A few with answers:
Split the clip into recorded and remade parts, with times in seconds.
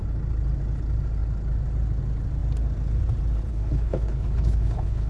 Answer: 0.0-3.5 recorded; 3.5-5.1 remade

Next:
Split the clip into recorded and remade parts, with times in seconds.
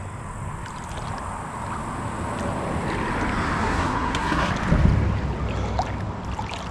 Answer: 0.0-3.6 recorded; 3.6-4.5 remade; 4.5-6.7 recorded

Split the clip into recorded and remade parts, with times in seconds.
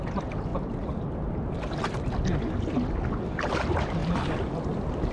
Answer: 0.0-5.1 recorded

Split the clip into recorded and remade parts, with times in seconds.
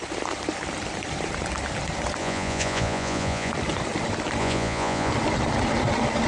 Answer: 0.0-2.2 recorded; 2.2-3.5 remade; 3.5-4.4 recorded; 4.4-5.1 remade; 5.1-6.3 recorded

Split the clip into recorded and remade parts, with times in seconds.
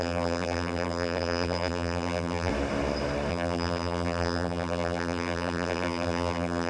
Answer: 0.0-2.5 remade; 2.5-3.3 recorded; 3.3-6.7 remade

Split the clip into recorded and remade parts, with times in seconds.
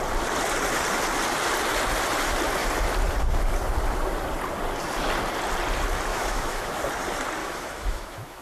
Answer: 0.0-6.1 recorded; 6.1-6.8 remade; 6.8-7.4 recorded; 7.4-8.4 remade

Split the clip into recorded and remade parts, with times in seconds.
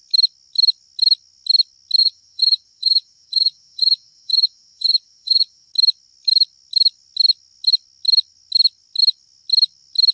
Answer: 0.0-2.0 recorded; 2.0-5.7 remade; 5.7-10.1 recorded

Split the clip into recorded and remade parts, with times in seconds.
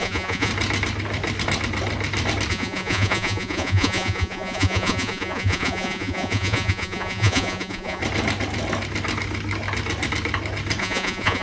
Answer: 0.0-0.5 remade; 0.5-2.5 recorded; 2.5-8.0 remade; 8.0-10.8 recorded; 10.8-11.4 remade